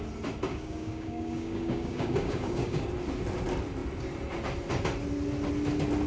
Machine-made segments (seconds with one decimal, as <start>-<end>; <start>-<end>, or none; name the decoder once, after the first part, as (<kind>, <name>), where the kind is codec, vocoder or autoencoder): 0.5-2.9 (codec, DAC)